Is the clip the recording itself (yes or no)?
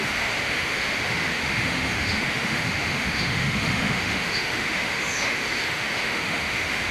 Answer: no